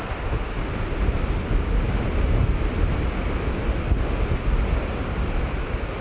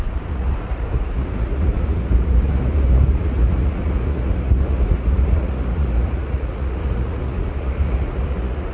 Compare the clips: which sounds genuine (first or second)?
first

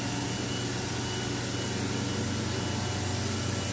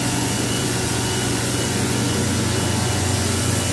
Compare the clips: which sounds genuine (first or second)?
first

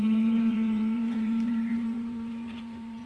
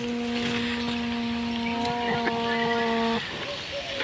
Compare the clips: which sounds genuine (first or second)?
second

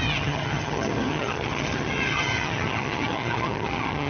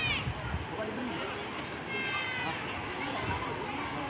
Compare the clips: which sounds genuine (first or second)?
second